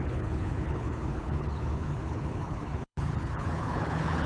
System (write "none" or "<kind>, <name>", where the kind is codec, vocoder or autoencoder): codec, HILCodec